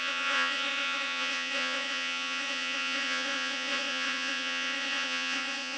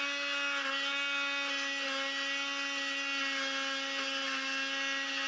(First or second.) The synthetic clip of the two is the first